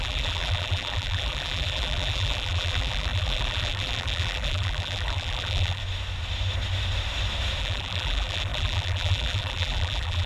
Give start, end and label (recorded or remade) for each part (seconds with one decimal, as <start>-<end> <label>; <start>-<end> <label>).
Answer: 0.0-5.8 remade; 5.8-7.6 recorded; 7.6-10.3 remade